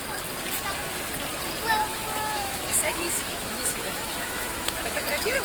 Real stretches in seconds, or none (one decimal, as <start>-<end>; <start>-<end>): 0.0-1.9